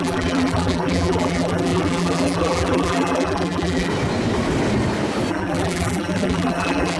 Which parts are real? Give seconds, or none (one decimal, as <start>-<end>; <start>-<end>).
3.9-5.3

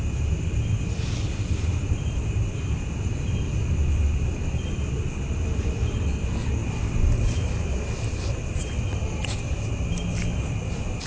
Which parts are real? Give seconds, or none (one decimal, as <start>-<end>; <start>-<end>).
none

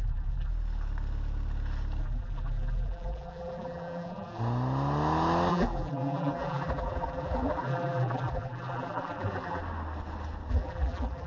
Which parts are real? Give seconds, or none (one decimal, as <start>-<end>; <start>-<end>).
0.5-2.0; 4.4-5.5; 9.6-10.5